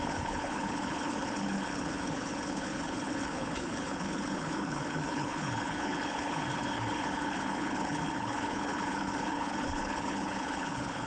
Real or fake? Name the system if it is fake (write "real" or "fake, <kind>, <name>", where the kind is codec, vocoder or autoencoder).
fake, codec, HILCodec